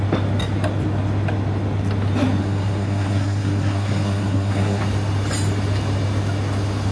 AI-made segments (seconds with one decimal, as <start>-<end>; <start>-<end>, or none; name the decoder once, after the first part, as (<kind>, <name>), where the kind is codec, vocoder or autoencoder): 2.4-4.8 (codec, SNAC)